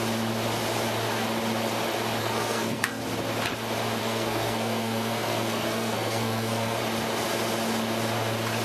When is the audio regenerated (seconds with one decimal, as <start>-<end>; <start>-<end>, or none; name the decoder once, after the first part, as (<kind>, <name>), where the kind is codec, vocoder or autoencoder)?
2.2-3.0 (codec, SNAC); 4.0-6.8